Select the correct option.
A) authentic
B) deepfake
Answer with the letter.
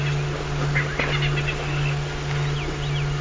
A